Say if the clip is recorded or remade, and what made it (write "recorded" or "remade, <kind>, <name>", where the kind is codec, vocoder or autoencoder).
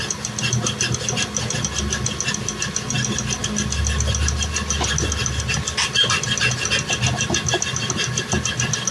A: recorded